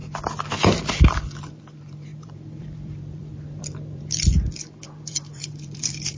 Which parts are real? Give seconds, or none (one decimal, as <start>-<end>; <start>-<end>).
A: 0.0-1.0